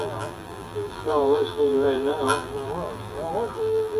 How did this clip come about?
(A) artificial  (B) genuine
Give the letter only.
A